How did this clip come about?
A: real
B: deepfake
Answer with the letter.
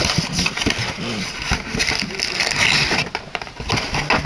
A